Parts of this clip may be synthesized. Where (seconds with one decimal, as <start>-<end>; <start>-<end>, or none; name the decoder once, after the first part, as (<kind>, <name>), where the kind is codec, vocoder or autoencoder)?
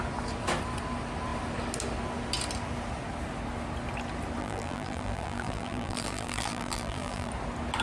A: 4.4-7.3 (vocoder, BigVGAN v2)